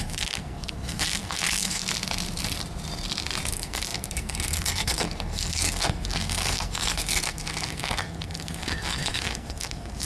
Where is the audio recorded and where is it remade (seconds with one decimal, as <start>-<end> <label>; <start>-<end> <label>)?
0.0-1.8 remade; 1.8-3.5 recorded; 3.5-10.1 remade